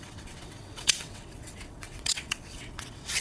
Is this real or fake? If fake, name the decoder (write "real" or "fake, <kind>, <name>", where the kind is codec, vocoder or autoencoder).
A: fake, vocoder, WaveNeXt